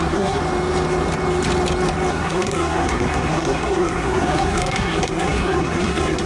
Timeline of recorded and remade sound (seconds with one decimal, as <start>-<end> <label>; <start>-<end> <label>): 0.0-0.4 remade; 0.4-2.1 recorded; 2.1-6.3 remade